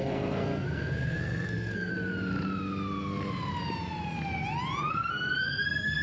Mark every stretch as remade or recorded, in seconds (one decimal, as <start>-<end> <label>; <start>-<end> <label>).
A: 0.0-1.9 remade; 1.9-4.9 recorded; 4.9-6.0 remade